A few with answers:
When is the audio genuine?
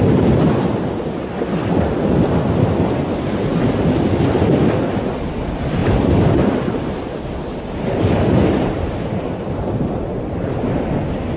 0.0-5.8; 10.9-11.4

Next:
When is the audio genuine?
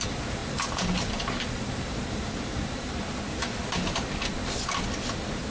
3.6-5.1